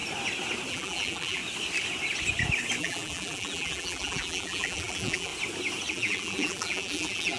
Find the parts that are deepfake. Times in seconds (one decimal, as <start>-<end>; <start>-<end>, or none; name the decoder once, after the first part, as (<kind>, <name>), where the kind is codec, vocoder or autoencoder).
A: 0.7-1.4 (vocoder, BigVGAN v2); 2.8-5.3; 5.9-7.4